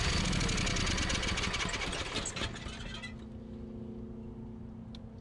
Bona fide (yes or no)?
yes